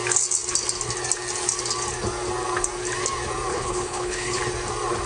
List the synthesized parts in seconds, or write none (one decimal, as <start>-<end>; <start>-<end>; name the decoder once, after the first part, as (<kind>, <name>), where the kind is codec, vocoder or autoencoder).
3.5-4.4 (codec, HILCodec)